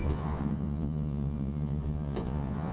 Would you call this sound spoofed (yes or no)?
yes